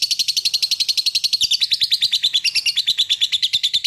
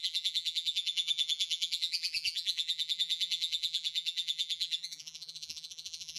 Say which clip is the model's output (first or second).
second